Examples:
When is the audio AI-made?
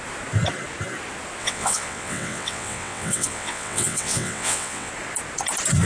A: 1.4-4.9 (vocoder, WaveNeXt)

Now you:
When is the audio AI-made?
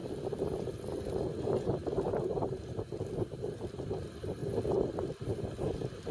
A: 1.4-4.4 (vocoder, BigVGAN v2); 5.6-6.1